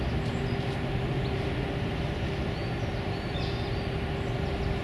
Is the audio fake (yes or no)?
no